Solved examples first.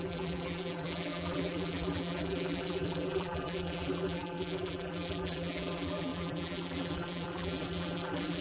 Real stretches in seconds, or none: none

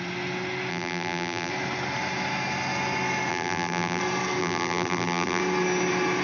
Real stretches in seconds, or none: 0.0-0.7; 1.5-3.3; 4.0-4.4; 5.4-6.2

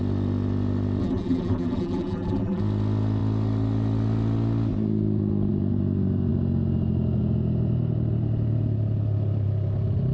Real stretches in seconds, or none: 0.0-1.0; 2.6-10.1

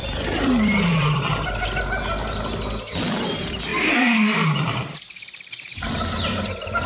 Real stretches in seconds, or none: 1.8-3.7; 5.9-6.9

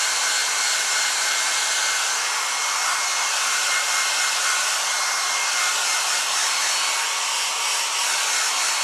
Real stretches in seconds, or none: 0.0-0.4; 1.8-3.1; 5.3-8.8

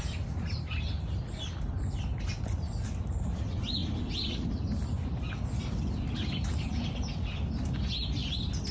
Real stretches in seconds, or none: 0.0-8.2

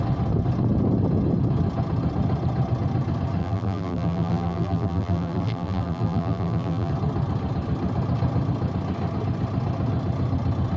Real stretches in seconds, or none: 0.0-3.4; 6.9-10.8